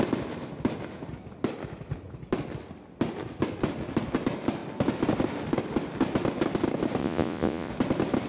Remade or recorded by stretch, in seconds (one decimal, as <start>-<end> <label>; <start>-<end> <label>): 0.0-7.0 recorded; 7.0-7.7 remade; 7.7-8.3 recorded